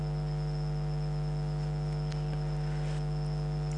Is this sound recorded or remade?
recorded